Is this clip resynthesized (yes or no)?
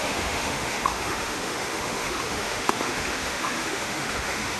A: yes